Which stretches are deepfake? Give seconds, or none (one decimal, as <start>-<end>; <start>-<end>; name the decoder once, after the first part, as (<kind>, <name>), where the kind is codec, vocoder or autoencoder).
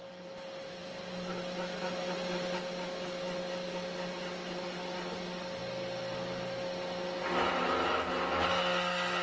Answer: none